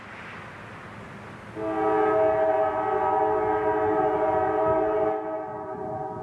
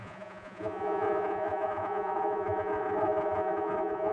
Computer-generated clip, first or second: second